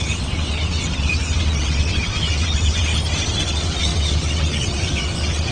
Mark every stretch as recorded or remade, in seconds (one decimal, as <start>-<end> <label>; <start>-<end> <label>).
0.0-2.9 remade; 2.9-3.4 recorded; 3.4-5.5 remade